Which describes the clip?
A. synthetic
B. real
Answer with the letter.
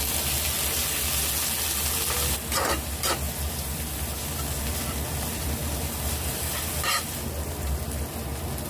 B